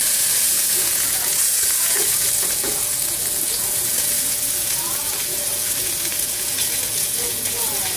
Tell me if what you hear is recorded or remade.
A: remade